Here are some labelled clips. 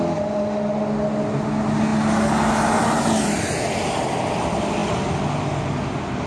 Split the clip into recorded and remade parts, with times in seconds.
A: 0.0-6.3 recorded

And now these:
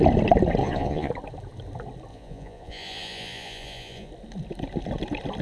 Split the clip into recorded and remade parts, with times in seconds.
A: 0.0-0.6 recorded; 0.6-1.1 remade; 1.1-2.1 recorded; 2.1-4.1 remade; 4.1-5.4 recorded